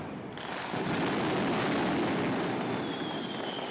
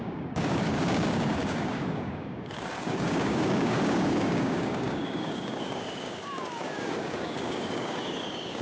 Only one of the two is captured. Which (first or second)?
first